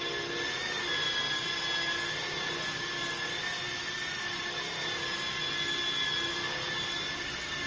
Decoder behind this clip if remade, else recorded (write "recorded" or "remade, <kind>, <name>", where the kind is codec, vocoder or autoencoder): recorded